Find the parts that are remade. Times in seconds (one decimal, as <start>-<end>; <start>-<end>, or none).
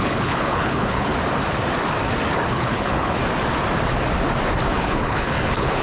0.0-1.1; 2.5-3.2; 4.7-5.8